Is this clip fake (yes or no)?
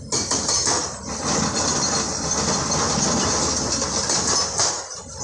no